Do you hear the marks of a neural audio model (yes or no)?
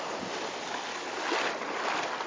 no